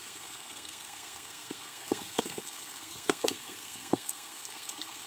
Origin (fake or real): fake